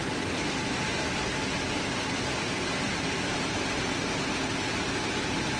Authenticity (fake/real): real